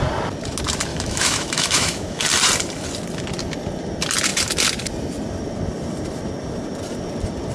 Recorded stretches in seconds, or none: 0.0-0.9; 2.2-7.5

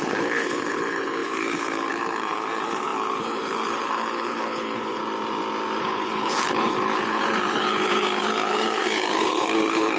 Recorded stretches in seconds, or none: 5.0-5.8

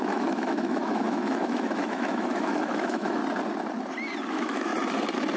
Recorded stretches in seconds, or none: 3.2-4.3; 4.7-5.4

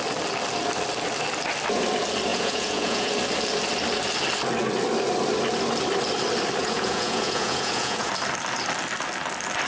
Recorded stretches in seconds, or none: 0.0-2.3; 3.1-6.6; 8.1-9.7

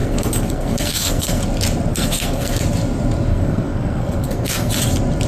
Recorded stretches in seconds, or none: 1.4-1.9; 2.6-3.3; 4.7-5.3